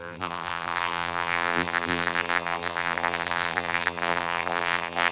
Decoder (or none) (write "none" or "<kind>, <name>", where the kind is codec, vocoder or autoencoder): vocoder, BigVGAN v2